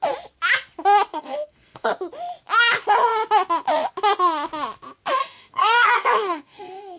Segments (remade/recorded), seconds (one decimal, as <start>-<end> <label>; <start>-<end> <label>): 0.0-1.1 recorded; 1.1-1.9 remade; 1.9-5.2 recorded; 5.2-7.0 remade